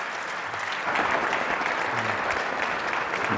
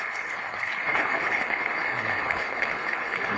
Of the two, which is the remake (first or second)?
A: second